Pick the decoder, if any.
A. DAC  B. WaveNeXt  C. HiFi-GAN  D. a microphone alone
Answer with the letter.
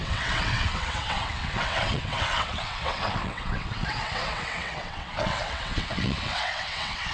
B